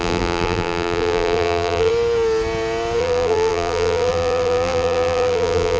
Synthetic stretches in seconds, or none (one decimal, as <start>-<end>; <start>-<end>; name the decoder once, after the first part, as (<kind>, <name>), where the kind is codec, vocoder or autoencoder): 0.0-1.9 (vocoder, BigVGAN v2); 3.0-5.8